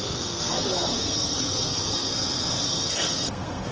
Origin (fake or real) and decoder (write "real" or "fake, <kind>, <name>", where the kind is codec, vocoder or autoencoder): fake, codec, SNAC